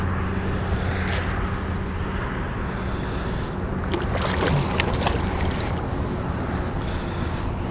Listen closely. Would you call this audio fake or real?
real